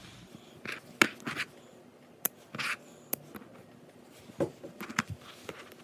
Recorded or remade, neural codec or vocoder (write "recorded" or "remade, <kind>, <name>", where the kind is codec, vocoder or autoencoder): recorded